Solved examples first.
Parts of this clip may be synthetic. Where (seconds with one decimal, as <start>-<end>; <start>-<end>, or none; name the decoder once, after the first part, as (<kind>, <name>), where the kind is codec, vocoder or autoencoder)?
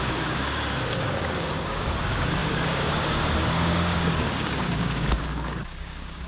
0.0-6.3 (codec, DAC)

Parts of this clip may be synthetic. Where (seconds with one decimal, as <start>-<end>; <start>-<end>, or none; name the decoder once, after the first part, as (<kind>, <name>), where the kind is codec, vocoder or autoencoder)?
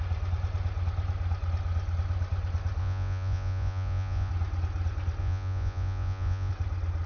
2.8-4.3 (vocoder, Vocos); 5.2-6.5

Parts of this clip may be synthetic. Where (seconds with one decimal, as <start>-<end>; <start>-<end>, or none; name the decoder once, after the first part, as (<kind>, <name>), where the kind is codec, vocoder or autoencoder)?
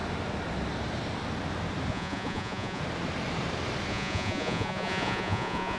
1.9-2.8 (vocoder, Vocos); 3.9-5.8